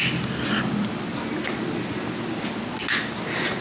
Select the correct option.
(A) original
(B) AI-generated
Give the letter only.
A